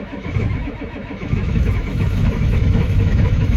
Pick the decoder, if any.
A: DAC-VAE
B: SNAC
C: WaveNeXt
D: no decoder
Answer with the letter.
A